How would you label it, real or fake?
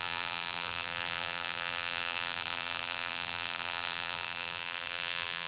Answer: fake